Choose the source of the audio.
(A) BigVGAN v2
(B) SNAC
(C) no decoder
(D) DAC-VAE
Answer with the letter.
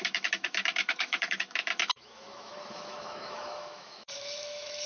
D